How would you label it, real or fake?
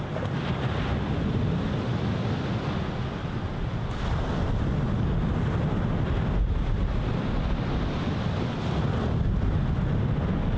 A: real